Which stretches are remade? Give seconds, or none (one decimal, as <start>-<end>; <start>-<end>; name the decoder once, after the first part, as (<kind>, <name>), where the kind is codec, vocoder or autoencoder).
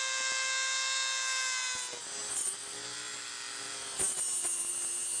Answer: none